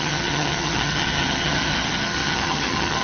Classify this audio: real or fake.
fake